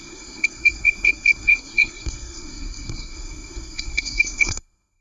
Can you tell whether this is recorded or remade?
remade